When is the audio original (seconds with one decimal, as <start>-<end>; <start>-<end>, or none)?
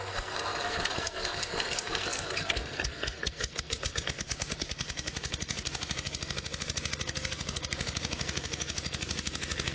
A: none